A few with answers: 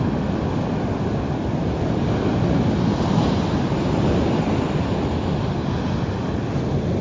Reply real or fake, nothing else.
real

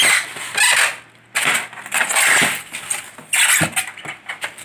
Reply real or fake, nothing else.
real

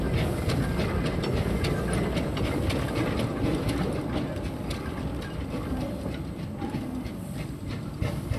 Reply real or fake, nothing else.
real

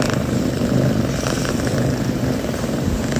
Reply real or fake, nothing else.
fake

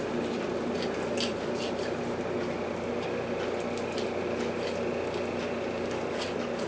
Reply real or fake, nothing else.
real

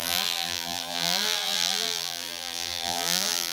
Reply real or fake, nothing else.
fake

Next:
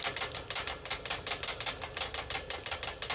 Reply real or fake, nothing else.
real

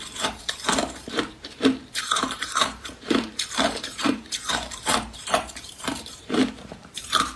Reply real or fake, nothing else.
fake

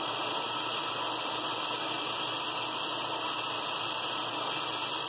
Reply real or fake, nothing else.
real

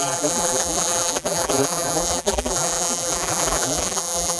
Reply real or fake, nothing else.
fake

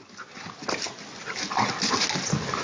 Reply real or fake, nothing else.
real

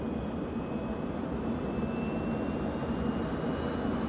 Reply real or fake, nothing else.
real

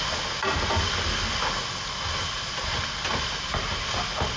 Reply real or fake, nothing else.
real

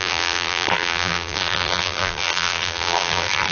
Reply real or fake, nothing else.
fake